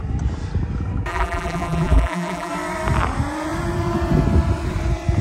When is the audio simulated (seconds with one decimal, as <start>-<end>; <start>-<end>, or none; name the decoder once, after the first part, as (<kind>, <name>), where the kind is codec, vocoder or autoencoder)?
1.1-2.5 (vocoder, BigVGAN v2)